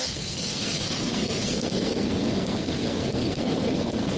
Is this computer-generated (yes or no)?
yes